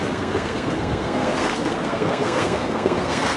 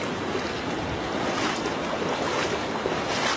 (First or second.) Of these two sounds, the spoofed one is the first